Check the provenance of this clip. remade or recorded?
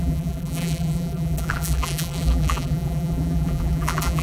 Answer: remade